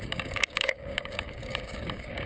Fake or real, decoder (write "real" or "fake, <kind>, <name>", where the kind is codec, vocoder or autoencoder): fake, codec, DAC